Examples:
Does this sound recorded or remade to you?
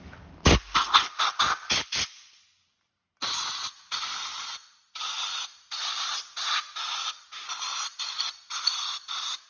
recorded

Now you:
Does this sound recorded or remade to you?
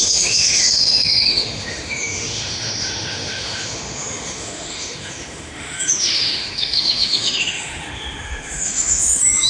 remade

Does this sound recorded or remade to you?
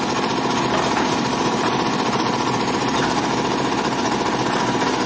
recorded